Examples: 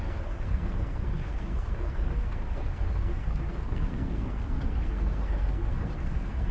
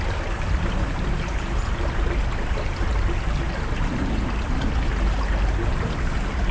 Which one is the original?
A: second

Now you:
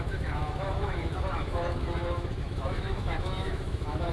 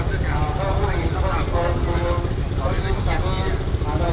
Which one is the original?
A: second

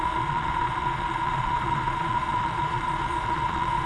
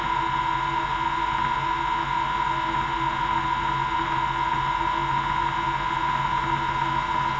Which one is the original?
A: second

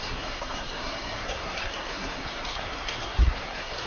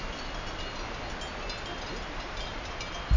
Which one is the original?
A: second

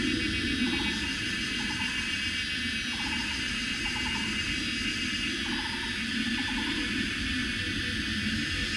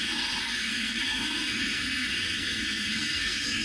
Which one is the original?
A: first